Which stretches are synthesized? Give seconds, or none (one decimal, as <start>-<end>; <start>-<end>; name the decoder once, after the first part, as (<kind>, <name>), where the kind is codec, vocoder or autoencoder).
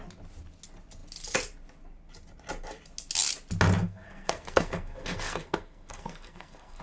3.8-6.8 (codec, SNAC)